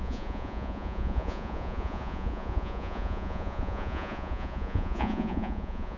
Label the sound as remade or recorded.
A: remade